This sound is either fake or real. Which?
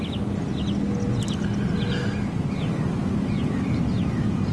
real